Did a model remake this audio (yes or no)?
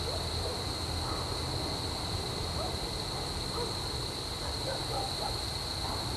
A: no